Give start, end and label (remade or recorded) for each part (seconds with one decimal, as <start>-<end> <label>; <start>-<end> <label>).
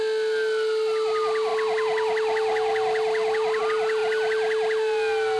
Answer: 0.0-5.4 recorded